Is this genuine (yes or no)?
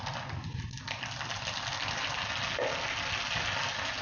yes